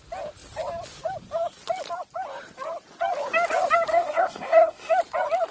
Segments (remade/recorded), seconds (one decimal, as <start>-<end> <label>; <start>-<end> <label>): 0.0-3.9 recorded; 3.9-4.9 remade; 4.9-5.5 recorded